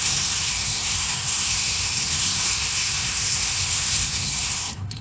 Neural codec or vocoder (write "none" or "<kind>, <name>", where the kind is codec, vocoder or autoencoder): codec, SNAC